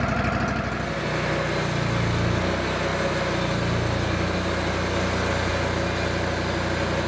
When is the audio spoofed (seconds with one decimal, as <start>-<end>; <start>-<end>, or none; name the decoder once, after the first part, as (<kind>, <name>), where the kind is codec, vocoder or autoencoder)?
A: none